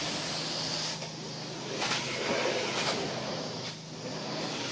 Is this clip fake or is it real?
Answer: real